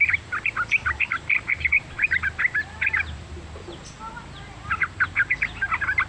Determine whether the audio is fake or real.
real